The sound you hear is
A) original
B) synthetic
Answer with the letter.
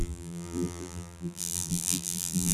B